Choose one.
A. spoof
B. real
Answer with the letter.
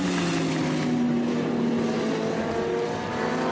B